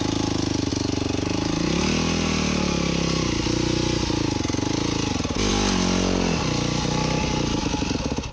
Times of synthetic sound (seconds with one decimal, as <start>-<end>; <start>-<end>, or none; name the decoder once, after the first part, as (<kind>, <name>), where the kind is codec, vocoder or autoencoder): none